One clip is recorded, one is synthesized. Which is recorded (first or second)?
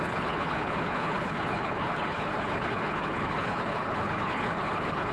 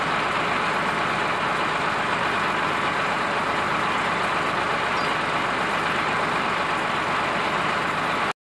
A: second